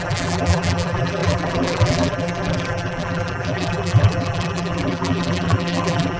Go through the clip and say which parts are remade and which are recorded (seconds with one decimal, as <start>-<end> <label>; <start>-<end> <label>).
0.0-6.2 remade